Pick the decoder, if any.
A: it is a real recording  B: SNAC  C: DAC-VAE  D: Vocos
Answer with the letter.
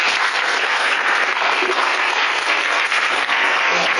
B